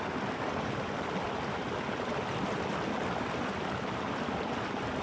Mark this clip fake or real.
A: real